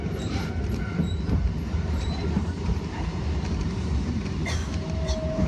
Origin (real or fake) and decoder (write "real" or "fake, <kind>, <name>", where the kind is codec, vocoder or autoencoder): fake, vocoder, BigVGAN v2